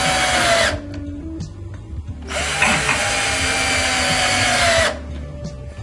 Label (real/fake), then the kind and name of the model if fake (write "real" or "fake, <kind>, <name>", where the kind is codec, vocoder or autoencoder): real